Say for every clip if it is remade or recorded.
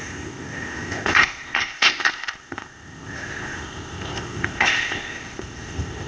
remade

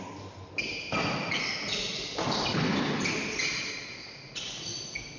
recorded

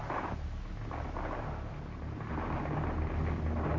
recorded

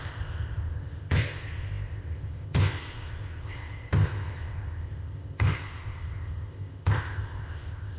remade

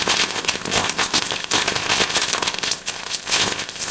remade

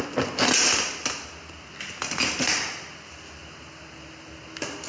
recorded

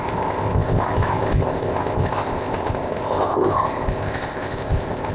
remade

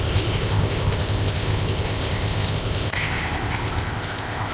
remade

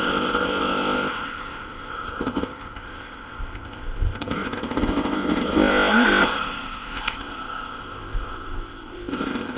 remade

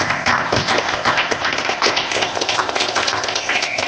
remade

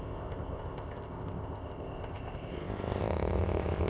remade